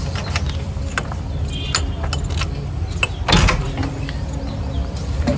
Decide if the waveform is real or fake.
real